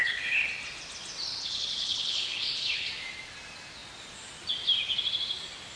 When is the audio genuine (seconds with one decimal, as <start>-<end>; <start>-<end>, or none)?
0.5-1.3; 2.9-5.8